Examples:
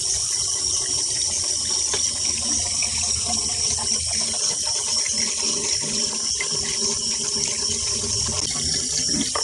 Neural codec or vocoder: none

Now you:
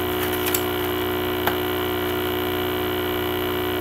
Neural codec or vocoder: none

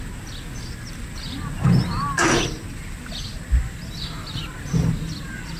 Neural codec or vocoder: none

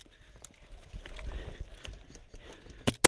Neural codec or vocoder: none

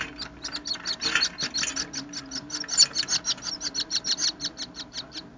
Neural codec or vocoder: none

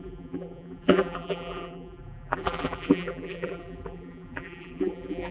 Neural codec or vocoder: vocoder, BigVGAN v2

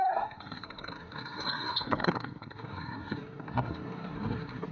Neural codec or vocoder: codec, SNAC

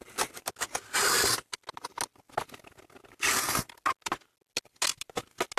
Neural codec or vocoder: none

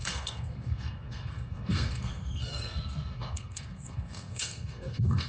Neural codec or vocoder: codec, SNAC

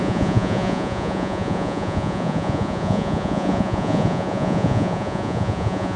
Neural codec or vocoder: vocoder, Vocos